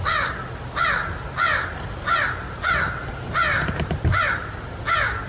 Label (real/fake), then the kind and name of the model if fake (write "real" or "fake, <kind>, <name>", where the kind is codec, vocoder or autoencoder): real